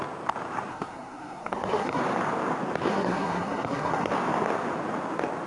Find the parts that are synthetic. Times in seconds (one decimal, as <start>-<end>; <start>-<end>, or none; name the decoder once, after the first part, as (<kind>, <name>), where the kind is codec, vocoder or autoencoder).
0.7-2.0 (codec, SNAC); 2.9-4.1